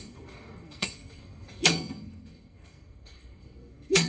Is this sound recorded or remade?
remade